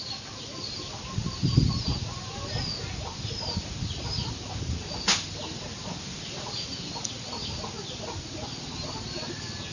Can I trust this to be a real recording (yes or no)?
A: yes